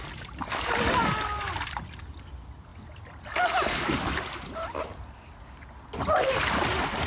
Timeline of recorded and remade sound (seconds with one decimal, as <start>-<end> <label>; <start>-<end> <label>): 0.0-7.1 recorded